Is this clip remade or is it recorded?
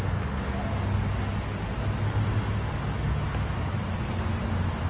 recorded